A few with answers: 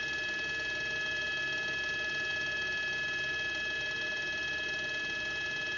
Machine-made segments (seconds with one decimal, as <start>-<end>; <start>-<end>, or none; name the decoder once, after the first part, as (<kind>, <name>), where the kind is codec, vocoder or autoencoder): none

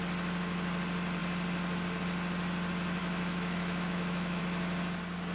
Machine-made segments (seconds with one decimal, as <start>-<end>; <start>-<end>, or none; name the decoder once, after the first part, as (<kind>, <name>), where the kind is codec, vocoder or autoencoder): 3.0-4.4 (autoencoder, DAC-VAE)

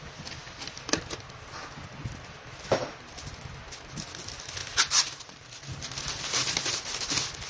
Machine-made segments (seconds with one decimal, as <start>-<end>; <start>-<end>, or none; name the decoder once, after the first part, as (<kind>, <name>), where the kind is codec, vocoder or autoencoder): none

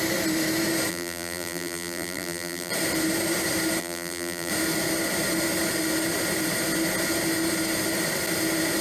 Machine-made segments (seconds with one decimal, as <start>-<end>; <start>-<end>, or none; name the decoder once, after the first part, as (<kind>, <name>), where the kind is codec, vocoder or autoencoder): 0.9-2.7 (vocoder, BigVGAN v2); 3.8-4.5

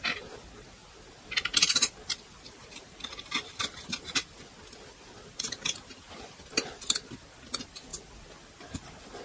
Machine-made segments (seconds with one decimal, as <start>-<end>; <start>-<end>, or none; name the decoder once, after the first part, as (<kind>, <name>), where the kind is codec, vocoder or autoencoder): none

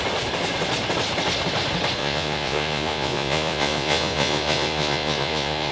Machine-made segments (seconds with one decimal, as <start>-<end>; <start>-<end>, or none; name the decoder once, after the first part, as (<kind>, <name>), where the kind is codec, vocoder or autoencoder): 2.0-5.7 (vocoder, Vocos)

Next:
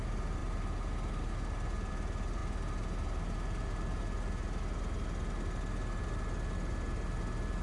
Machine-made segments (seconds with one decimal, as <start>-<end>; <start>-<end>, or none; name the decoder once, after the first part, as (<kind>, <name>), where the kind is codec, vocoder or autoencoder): none